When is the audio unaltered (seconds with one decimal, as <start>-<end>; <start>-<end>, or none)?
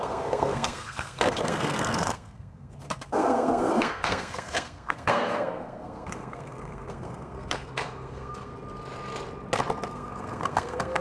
8.5-9.9